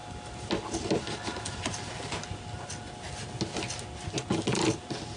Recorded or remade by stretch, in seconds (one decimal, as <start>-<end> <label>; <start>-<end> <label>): 0.0-5.2 recorded